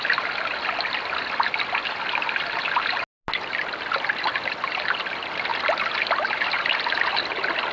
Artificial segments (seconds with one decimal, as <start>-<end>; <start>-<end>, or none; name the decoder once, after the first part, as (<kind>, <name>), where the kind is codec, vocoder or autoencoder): none